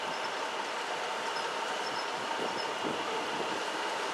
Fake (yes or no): no